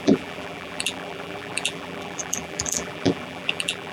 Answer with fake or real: fake